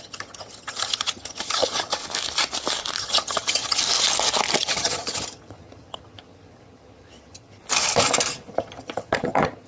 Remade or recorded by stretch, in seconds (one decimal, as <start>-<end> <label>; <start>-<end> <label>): 0.0-2.0 remade; 2.0-3.0 recorded; 3.0-3.8 remade; 3.8-4.6 recorded; 4.6-7.6 remade; 7.6-8.5 recorded; 8.5-9.7 remade